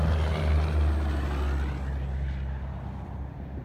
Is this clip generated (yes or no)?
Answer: no